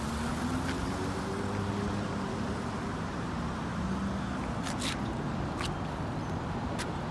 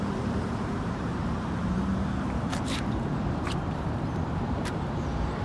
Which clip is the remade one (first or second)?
second